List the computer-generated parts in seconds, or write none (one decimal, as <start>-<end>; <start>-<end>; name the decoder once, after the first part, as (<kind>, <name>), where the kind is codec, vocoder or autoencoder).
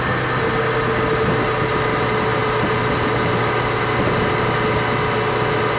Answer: none